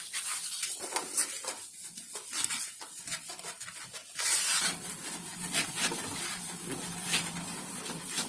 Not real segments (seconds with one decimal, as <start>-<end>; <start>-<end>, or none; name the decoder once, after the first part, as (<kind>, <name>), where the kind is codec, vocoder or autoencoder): none